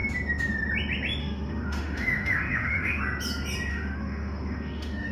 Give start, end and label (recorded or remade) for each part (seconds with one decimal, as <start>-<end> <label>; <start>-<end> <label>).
0.0-1.2 recorded; 1.2-3.0 remade; 3.0-3.7 recorded; 3.7-5.1 remade